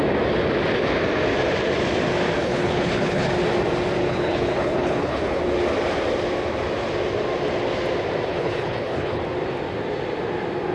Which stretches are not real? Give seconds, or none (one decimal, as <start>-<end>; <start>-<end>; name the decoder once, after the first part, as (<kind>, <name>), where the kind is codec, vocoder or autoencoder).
2.4-3.3 (codec, HILCodec); 4.0-5.4; 8.3-9.2

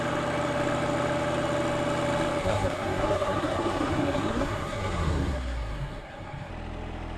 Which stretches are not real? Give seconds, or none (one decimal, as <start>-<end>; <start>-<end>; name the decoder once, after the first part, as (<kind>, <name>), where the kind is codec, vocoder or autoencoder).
2.4-6.5 (codec, SNAC)